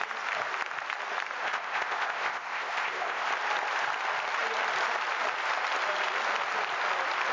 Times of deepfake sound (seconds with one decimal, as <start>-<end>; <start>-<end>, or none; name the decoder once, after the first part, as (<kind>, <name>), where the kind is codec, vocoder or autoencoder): 1.4-3.3 (codec, ZipCodec)